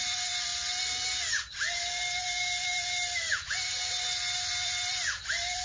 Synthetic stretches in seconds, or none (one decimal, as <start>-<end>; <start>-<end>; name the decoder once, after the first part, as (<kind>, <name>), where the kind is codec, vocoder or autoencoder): 0.0-0.5 (vocoder, BigVGAN v2); 1.3-5.6